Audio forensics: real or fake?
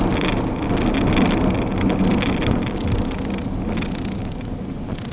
real